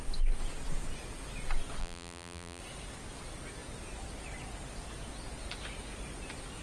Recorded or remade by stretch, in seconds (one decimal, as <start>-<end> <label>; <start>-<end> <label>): 0.0-1.8 recorded; 1.8-2.6 remade; 2.6-6.6 recorded